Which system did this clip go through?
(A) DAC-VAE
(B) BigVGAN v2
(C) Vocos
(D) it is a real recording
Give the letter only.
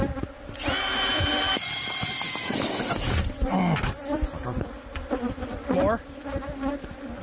D